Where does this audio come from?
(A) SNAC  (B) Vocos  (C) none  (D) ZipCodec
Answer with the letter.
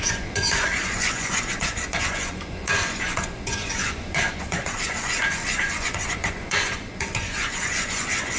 B